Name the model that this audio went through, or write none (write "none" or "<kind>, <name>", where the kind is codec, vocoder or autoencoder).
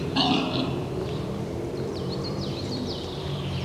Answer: vocoder, BigVGAN v2